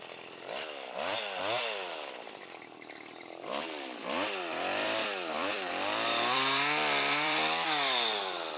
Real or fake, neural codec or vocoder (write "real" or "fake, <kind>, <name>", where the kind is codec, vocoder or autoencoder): fake, vocoder, BigVGAN v2